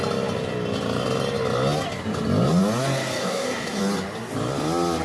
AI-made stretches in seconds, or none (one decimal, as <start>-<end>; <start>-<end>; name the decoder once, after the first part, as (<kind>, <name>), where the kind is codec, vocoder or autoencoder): 3.2-3.8 (codec, SNAC)